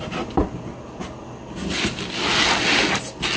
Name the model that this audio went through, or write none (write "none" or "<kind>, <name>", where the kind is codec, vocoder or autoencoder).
none